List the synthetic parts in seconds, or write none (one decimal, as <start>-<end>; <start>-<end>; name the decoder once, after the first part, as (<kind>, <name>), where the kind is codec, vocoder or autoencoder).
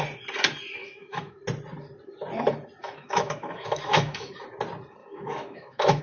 0.8-1.4 (autoencoder, DAC-VAE); 2.8-4.3; 5.0-6.0